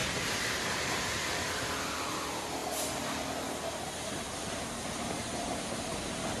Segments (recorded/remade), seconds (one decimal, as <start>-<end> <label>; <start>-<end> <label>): 0.0-1.0 remade; 1.0-6.4 recorded